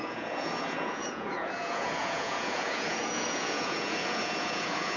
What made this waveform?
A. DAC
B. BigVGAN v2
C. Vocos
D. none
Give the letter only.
C